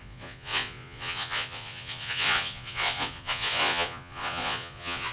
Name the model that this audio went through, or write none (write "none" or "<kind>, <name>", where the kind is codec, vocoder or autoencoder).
vocoder, Vocos